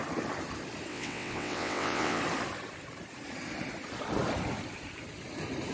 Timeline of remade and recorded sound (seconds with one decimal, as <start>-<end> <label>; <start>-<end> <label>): 0.0-0.9 recorded; 0.9-2.2 remade; 2.2-5.7 recorded